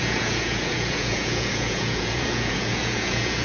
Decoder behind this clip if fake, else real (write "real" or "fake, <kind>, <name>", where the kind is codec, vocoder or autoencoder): fake, vocoder, Vocos